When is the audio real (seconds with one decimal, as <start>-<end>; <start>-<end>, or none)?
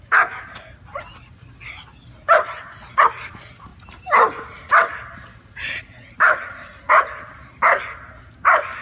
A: 0.0-3.7; 4.7-5.3; 6.4-8.8